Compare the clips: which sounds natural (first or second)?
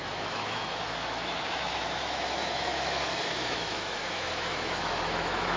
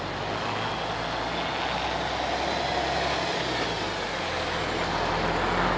second